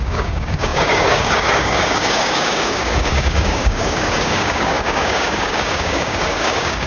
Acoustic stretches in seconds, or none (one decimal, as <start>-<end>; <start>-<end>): none